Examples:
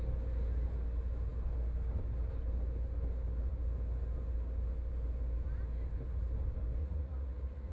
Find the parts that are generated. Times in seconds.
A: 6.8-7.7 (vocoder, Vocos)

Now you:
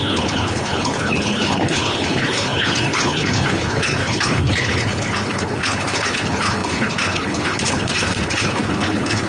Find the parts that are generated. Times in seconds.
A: 0.0-9.3 (codec, HILCodec)

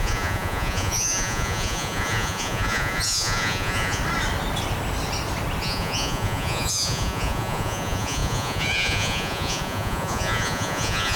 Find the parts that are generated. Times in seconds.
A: 0.0-4.0 (vocoder, Vocos); 5.6-11.2